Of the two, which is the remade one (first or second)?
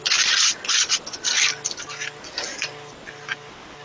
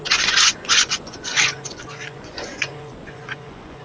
second